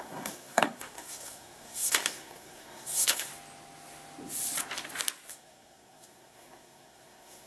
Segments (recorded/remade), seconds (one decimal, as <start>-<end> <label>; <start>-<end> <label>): 0.0-3.3 remade; 3.3-5.3 recorded; 5.3-7.5 remade